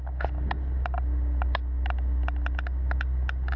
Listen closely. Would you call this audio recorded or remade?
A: recorded